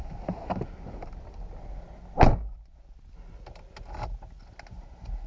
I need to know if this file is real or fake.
real